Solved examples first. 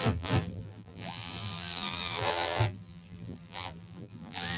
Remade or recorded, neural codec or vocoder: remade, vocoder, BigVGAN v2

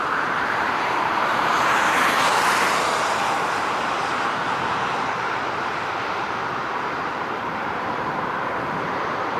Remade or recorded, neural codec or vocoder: remade, vocoder, BigVGAN v2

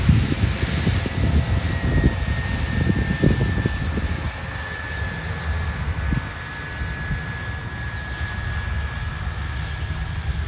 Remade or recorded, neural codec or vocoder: recorded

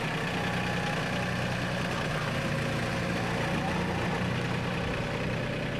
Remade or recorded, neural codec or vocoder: recorded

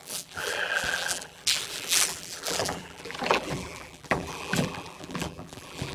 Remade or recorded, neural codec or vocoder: remade, vocoder, BigVGAN v2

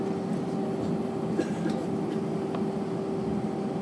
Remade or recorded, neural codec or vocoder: recorded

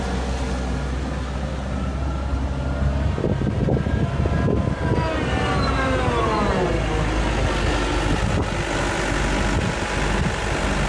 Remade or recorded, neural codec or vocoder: recorded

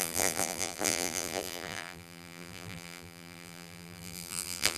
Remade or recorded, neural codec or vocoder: remade, vocoder, BigVGAN v2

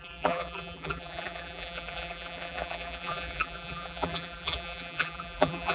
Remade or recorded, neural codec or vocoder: remade, vocoder, BigVGAN v2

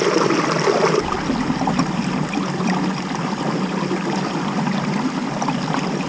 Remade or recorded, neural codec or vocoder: remade, vocoder, BigVGAN v2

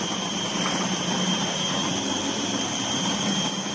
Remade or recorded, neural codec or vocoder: remade, vocoder, BigVGAN v2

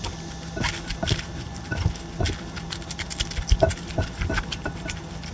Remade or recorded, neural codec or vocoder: recorded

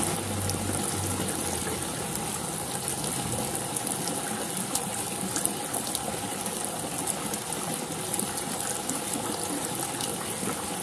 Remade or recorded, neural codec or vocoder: recorded